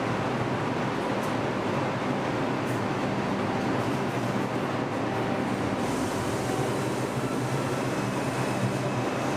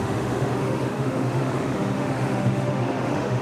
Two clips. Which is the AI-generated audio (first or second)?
second